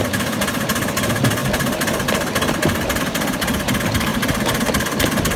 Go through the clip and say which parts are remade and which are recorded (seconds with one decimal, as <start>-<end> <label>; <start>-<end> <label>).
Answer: 0.0-5.4 recorded